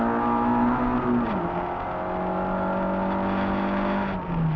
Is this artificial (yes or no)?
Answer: no